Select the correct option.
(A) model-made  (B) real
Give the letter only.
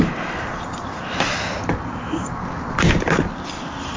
B